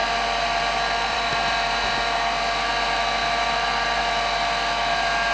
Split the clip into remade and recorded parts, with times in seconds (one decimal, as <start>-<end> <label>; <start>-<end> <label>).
0.0-1.3 remade; 1.3-3.2 recorded; 3.2-4.0 remade; 4.0-5.3 recorded